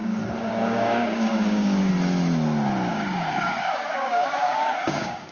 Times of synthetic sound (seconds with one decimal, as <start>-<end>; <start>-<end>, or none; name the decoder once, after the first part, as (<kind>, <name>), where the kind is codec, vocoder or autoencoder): 0.0-1.9 (codec, DAC); 2.9-5.3